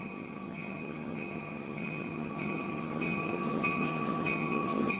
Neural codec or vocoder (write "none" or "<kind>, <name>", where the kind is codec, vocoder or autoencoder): vocoder, HiFi-GAN